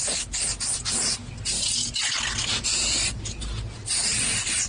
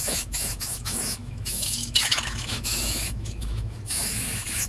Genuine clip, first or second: first